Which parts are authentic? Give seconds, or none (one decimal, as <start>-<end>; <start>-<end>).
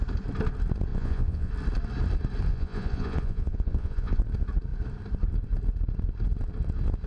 0.0-0.9; 1.5-2.5; 4.2-7.1